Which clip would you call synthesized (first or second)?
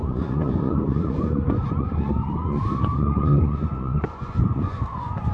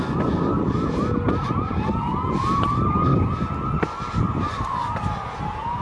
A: first